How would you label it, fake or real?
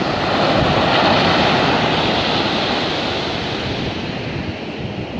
real